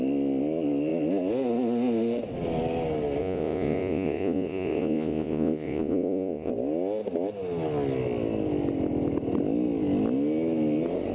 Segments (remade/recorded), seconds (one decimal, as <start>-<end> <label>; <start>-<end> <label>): 0.0-3.2 recorded; 3.2-6.5 remade; 6.5-11.1 recorded